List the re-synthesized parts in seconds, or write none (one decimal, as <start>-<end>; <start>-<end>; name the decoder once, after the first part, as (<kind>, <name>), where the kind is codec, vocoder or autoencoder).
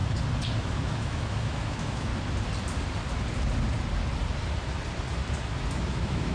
0.6-2.1 (autoencoder, DAC-VAE); 5.7-6.3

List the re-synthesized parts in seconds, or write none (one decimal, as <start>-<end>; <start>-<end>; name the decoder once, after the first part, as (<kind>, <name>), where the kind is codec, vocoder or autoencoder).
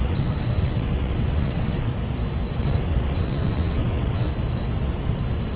0.0-1.9 (vocoder, WaveNeXt); 2.6-4.3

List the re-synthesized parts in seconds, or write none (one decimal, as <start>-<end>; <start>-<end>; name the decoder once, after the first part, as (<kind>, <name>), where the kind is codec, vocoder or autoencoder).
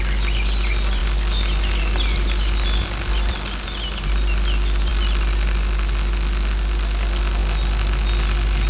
none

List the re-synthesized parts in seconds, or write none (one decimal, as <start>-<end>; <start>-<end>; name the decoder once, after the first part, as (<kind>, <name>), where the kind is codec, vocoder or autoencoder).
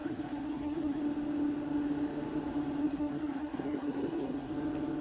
0.0-1.0 (codec, SNAC); 2.8-4.5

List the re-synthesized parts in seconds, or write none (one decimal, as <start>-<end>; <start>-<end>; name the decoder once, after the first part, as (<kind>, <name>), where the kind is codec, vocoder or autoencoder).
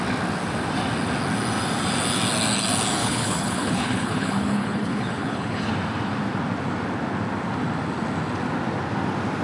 3.0-5.7 (codec, HILCodec)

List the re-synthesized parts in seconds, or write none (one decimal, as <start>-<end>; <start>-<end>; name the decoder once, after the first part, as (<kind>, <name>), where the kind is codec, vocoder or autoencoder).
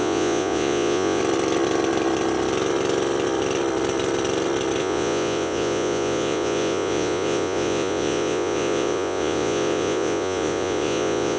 0.0-1.2 (vocoder, Vocos); 4.8-11.4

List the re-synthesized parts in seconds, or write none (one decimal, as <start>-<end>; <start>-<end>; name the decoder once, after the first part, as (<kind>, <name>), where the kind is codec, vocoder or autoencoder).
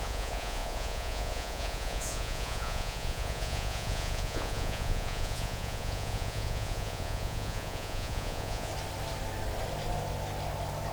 0.0-8.7 (vocoder, Vocos)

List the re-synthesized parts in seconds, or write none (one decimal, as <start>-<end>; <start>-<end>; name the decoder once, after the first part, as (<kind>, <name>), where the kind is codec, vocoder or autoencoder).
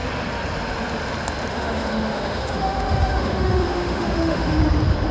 1.5-4.6 (autoencoder, DAC-VAE)